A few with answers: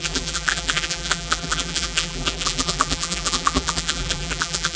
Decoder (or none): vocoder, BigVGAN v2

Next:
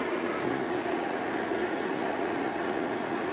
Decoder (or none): vocoder, Vocos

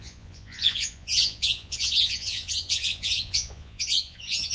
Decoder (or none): vocoder, Vocos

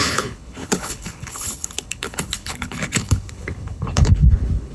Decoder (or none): codec, HILCodec